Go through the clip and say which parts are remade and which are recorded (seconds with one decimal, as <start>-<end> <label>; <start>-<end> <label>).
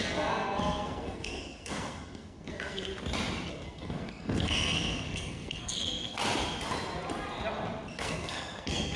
0.0-2.9 remade; 2.9-3.5 recorded; 3.5-6.2 remade; 6.2-7.9 recorded; 7.9-9.0 remade